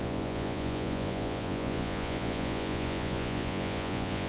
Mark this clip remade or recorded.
remade